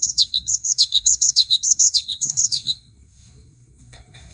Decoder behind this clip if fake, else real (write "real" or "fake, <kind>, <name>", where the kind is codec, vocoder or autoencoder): fake, codec, SNAC